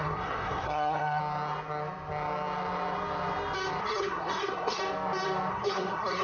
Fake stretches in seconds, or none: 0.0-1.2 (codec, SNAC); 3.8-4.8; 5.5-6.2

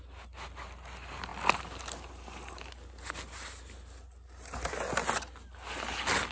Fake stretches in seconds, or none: none

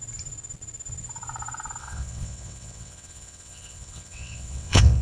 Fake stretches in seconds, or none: 1.8-5.0 (vocoder, WaveNeXt)